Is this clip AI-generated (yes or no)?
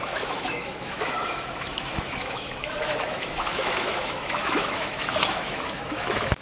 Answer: yes